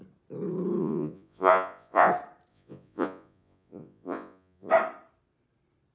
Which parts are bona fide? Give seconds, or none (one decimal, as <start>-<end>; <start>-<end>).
0.0-0.8; 2.1-2.5; 4.7-5.9